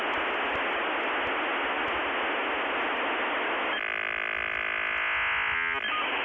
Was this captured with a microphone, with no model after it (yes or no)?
yes